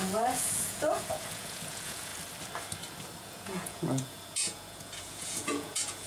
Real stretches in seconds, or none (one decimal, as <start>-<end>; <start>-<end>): 2.1-3.2